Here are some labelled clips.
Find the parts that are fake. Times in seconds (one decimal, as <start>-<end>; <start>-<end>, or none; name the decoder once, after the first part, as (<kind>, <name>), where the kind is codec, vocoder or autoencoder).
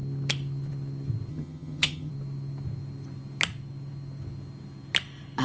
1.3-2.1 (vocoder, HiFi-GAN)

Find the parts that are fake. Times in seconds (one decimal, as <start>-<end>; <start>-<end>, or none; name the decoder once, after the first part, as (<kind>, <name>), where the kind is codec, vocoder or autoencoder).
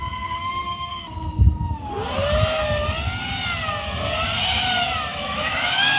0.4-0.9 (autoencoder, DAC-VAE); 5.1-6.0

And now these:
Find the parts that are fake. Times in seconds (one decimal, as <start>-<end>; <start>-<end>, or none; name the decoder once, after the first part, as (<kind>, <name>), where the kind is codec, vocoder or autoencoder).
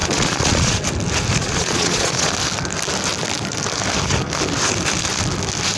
0.0-0.8 (vocoder, Vocos); 1.4-2.3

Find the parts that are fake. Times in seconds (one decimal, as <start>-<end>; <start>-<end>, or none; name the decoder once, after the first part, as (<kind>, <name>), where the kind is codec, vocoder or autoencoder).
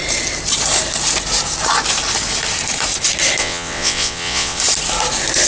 3.4-4.6 (vocoder, WaveNeXt)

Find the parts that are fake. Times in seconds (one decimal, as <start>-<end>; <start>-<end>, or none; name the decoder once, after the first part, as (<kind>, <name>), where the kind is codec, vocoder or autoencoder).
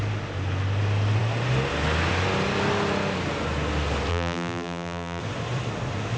4.1-5.2 (vocoder, BigVGAN v2)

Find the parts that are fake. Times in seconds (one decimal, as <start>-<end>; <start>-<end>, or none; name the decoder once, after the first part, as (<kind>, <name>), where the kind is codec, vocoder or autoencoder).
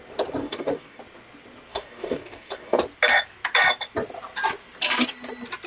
0.4-1.0 (codec, DAC); 1.7-2.8